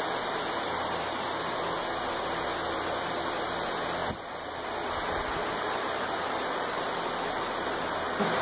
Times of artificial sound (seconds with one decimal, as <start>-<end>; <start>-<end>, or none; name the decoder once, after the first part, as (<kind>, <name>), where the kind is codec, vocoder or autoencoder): none